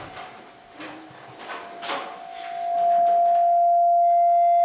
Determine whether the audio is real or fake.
real